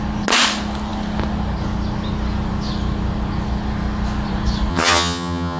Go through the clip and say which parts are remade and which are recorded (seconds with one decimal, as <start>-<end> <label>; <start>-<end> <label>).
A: 0.0-4.7 recorded; 4.7-5.6 remade